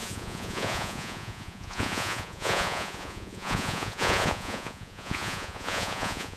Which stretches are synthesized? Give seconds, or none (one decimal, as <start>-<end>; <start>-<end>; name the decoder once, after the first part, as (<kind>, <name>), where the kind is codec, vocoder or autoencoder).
0.0-6.4 (vocoder, Vocos)